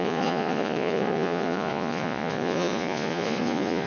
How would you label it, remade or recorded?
remade